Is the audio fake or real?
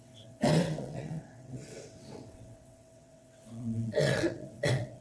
fake